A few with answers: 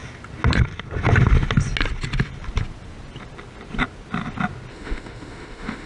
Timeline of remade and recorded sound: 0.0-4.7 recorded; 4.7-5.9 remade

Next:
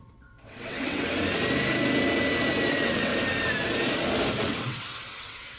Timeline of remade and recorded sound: 0.0-1.1 remade; 1.1-2.7 recorded; 2.7-3.1 remade; 3.1-4.4 recorded; 4.4-5.6 remade

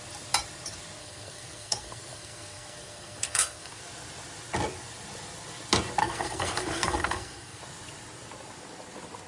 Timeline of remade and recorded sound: 0.0-1.0 recorded; 1.0-3.8 remade; 3.8-6.0 recorded; 6.0-7.6 remade; 7.6-9.3 recorded

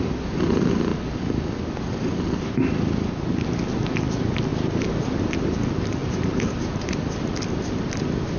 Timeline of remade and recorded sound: 0.0-4.5 recorded; 4.5-5.2 remade; 5.2-6.0 recorded; 6.0-7.3 remade; 7.3-8.4 recorded

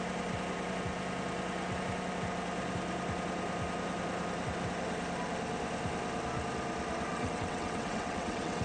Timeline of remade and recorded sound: 0.0-7.1 recorded; 7.1-8.6 remade

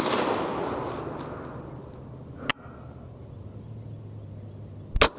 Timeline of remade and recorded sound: 0.0-5.2 recorded

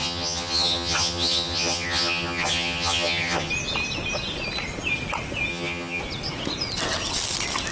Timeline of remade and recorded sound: 0.0-3.5 remade; 3.5-5.5 recorded; 5.5-6.0 remade; 6.0-7.7 recorded

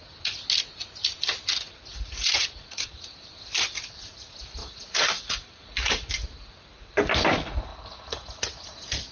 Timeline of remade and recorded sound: 0.0-1.9 recorded; 1.9-3.0 remade; 3.0-4.6 recorded; 4.6-6.1 remade; 6.1-7.7 recorded; 7.7-8.4 remade; 8.4-9.1 recorded